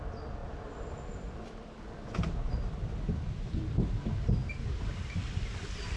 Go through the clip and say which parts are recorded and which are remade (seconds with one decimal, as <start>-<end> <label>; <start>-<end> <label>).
0.0-0.4 recorded; 0.4-1.3 remade; 1.3-4.4 recorded; 4.4-4.9 remade; 4.9-6.0 recorded